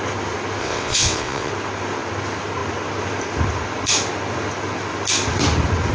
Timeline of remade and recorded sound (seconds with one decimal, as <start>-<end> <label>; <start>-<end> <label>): 0.0-0.6 recorded; 0.6-1.5 remade; 1.5-5.9 recorded